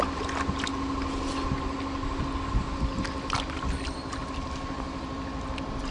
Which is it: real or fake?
real